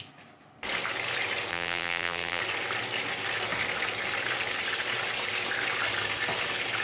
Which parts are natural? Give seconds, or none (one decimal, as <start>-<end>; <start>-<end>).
0.0-1.5; 2.4-6.8